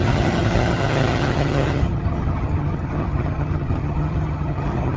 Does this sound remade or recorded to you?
remade